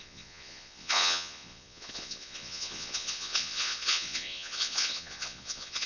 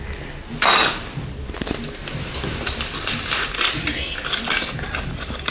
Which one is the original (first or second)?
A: second